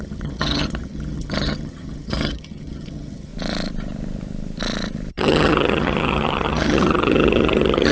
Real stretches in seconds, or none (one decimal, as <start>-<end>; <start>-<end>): 3.3-5.1